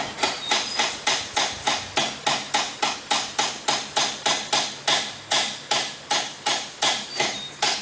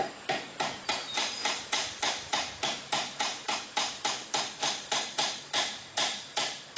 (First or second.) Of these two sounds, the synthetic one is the second